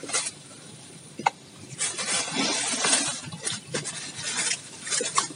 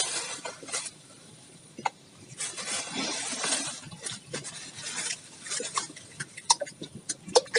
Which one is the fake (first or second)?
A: second